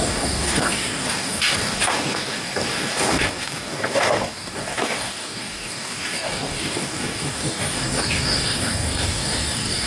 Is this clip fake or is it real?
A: fake